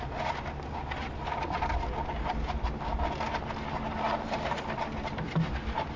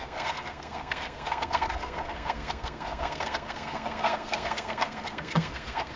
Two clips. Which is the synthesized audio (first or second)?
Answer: second